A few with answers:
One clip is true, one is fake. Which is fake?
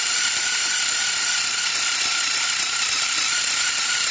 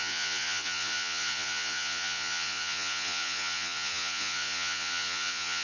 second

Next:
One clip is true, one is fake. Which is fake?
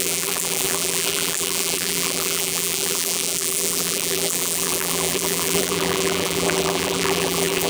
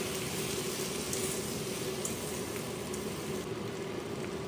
first